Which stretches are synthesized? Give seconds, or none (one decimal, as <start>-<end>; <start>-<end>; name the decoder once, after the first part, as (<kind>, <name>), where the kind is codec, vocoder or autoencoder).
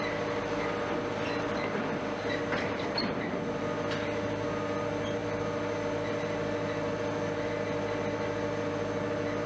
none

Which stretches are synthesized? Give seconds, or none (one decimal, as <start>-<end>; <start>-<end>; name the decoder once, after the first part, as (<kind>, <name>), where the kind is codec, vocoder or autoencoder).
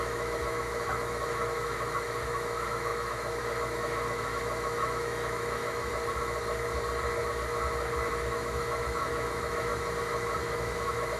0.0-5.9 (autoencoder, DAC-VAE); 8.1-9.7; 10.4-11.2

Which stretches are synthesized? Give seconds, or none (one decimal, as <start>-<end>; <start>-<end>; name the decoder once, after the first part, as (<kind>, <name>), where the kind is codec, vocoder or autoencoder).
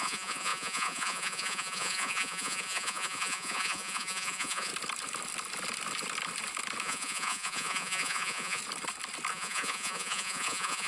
0.0-4.7 (vocoder, Vocos); 6.8-8.6; 9.3-10.9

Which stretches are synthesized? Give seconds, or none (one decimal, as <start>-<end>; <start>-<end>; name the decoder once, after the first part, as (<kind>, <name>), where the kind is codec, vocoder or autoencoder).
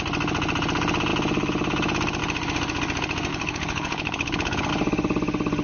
3.3-4.7 (codec, HILCodec)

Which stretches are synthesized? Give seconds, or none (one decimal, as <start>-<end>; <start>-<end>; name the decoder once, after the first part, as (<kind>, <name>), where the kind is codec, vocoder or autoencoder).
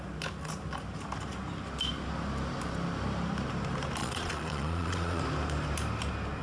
4.0-5.2 (vocoder, Vocos)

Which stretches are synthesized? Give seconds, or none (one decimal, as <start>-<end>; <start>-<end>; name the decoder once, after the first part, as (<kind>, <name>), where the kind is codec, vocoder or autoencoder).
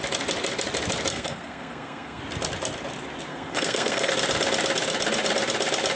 1.1-2.2 (codec, SNAC); 3.3-4.1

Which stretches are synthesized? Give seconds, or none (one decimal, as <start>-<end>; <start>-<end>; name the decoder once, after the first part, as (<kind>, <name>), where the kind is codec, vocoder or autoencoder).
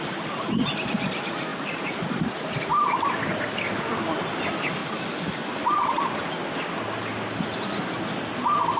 none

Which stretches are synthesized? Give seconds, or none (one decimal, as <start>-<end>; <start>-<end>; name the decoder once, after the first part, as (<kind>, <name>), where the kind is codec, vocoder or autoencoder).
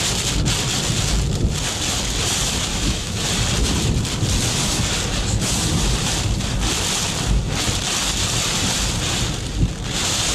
2.7-3.3 (autoencoder, DAC-VAE)